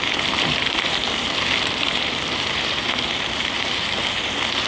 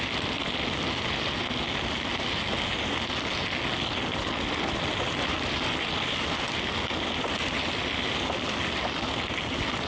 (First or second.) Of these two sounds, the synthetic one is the first